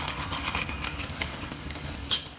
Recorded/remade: remade